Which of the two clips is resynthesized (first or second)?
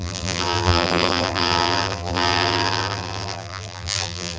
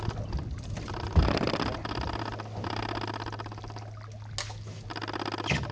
first